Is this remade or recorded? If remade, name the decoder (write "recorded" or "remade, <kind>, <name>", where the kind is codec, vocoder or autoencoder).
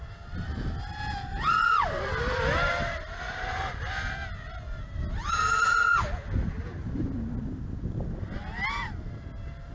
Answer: recorded